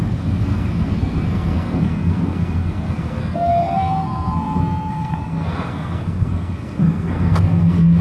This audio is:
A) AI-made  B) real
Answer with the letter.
A